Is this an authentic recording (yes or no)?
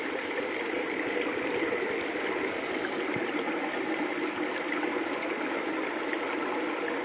yes